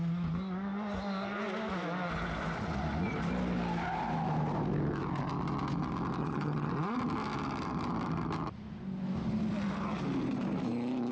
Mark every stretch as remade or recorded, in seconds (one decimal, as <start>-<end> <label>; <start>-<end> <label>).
0.0-6.2 recorded; 6.2-6.7 remade; 6.7-11.1 recorded